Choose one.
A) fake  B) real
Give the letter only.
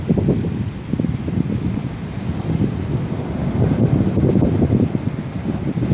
B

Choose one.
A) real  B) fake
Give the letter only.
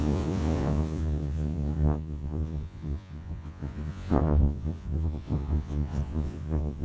B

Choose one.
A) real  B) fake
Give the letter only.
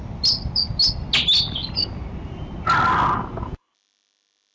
A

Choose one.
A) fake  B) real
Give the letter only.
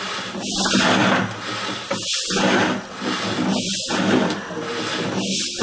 B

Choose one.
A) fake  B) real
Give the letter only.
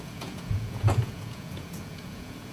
A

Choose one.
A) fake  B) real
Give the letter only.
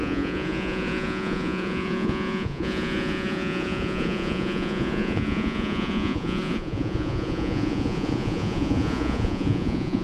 A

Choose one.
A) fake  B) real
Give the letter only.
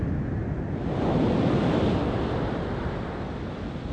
B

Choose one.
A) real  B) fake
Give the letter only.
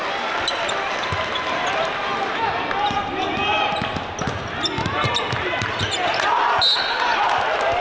A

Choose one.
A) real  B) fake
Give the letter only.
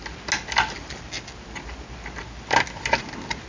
A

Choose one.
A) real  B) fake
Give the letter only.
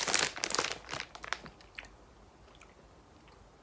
A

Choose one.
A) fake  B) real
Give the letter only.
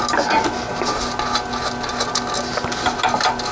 B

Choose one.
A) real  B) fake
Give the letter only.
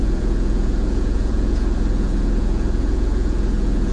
B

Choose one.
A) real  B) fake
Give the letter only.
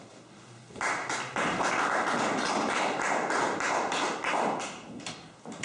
A